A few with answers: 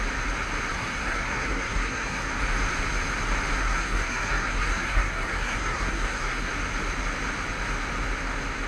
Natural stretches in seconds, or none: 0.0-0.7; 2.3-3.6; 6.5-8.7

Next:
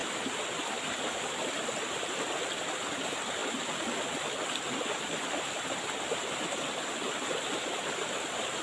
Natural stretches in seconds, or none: 0.0-8.6

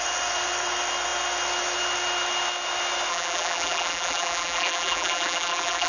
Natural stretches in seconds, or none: 0.0-3.1

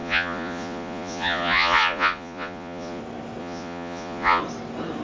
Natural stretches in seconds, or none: 3.0-3.4; 4.4-5.0

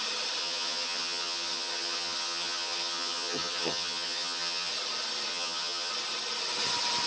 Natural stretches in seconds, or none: 0.0-0.4; 4.7-5.3; 5.9-7.1

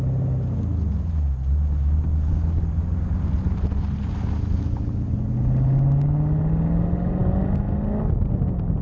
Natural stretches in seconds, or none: 0.0-8.8